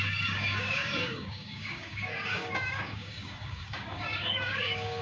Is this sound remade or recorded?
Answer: remade